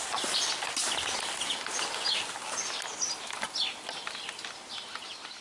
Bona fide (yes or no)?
yes